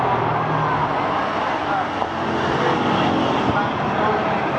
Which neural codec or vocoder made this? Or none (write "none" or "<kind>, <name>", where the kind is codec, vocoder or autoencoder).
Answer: none